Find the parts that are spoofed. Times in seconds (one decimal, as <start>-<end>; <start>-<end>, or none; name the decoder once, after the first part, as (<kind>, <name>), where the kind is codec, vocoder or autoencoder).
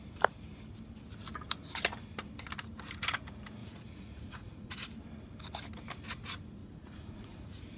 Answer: 3.6-4.7 (vocoder, Vocos); 6.6-7.8